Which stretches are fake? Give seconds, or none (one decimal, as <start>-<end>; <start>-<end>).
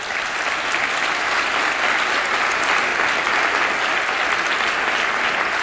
none